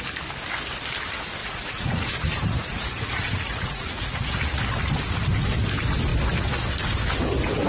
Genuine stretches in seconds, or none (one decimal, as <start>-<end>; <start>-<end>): 0.0-1.4; 4.6-7.7